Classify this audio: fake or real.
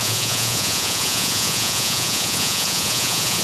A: fake